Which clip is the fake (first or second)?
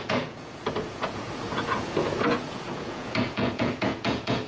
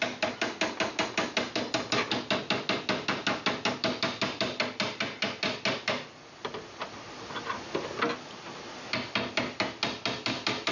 first